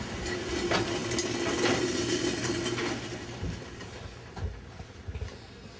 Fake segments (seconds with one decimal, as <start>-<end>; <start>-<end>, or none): none